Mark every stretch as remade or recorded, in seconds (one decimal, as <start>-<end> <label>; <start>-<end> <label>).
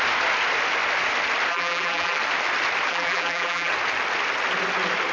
0.0-1.5 recorded; 1.5-2.2 remade; 2.2-2.9 recorded; 2.9-3.7 remade; 3.7-5.1 recorded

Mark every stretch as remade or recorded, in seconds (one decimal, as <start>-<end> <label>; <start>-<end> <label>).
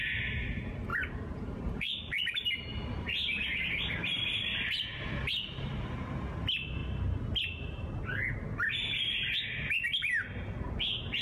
0.0-0.9 recorded; 0.9-6.0 remade; 6.0-11.2 recorded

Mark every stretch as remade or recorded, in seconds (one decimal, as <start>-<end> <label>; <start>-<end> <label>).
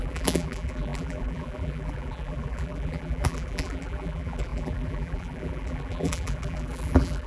0.0-7.3 remade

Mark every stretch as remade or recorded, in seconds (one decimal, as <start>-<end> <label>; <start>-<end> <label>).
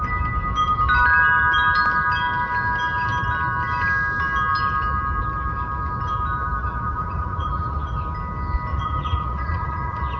0.0-6.6 recorded; 6.6-8.0 remade; 8.0-8.7 recorded; 8.7-10.2 remade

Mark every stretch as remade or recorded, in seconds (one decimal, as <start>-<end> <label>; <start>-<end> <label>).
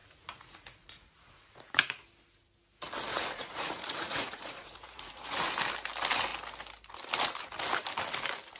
0.0-2.0 remade; 2.0-3.1 recorded; 3.1-5.5 remade; 5.5-8.6 recorded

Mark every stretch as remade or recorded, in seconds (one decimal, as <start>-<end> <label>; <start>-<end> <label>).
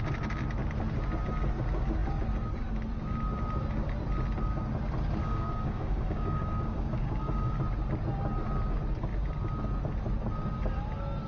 0.0-5.2 recorded; 5.2-7.6 remade; 7.6-11.3 recorded